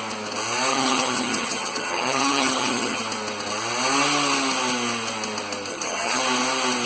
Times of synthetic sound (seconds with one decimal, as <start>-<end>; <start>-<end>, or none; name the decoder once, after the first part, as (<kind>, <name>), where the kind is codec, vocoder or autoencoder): 0.7-3.0 (vocoder, HiFi-GAN); 5.7-6.2